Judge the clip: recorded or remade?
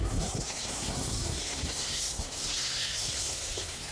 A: remade